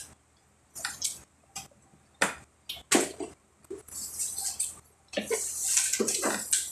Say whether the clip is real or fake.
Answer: real